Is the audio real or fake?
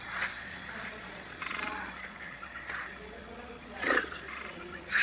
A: fake